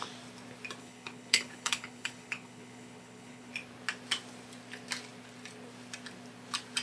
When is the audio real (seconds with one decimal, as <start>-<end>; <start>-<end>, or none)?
0.0-0.8; 3.5-6.8